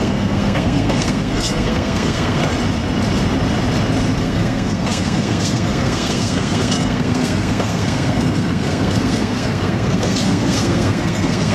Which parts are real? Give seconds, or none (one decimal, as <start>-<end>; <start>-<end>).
2.4-4.2